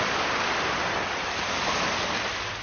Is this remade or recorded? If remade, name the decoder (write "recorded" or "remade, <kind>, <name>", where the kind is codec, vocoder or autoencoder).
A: remade, vocoder, BigVGAN v2